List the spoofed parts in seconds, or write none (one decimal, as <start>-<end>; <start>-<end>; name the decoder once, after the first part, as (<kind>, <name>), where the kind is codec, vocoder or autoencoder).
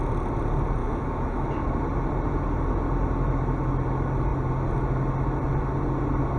0.8-1.5 (autoencoder, DAC-VAE)